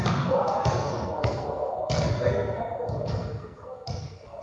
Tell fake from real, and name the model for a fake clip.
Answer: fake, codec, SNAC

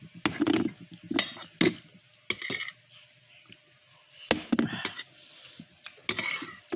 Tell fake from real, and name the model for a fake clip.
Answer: real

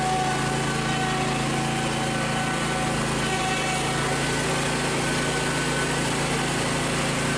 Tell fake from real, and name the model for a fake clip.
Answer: real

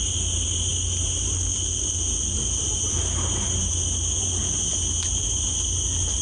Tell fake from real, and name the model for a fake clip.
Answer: real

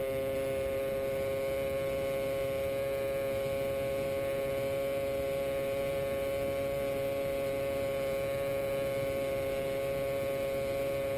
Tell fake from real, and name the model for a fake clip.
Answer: real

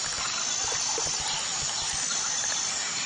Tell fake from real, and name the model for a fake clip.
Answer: real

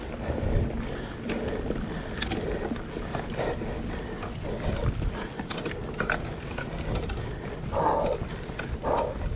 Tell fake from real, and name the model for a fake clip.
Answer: real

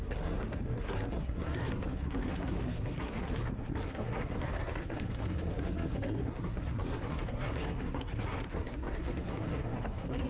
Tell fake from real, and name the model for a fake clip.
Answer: fake, codec, SNAC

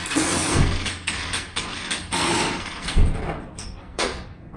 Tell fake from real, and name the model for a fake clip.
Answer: fake, codec, SNAC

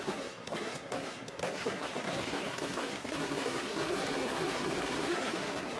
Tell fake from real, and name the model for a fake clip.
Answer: fake, codec, SNAC